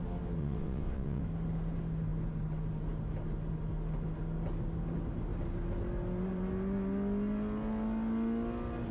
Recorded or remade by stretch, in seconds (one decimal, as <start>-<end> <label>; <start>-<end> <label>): 0.0-0.4 recorded; 0.4-1.2 remade; 1.2-8.9 recorded